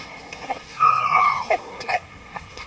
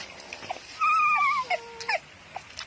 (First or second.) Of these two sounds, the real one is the second